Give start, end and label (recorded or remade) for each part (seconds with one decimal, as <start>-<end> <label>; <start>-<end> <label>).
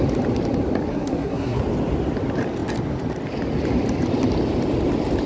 0.0-0.9 recorded; 0.9-1.6 remade; 1.6-5.3 recorded